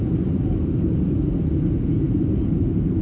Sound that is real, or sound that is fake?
fake